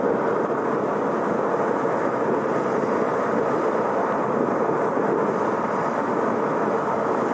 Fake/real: real